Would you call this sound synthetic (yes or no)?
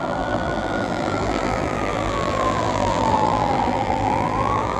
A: yes